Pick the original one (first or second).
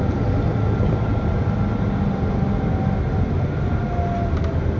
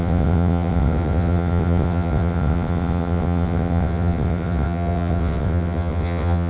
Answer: first